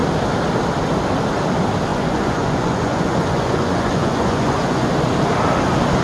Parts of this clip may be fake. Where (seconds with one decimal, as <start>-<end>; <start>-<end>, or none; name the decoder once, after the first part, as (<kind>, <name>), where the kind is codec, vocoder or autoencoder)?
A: 1.9-4.9 (vocoder, Vocos)